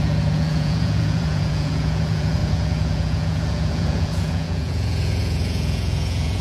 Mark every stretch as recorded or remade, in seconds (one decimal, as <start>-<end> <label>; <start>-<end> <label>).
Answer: 0.0-6.4 remade